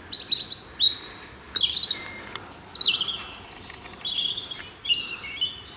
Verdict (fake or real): real